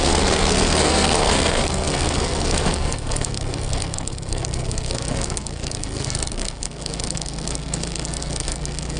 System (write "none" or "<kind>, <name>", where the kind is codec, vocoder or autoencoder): codec, SNAC